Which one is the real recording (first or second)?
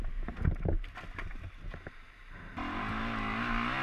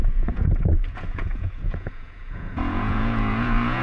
first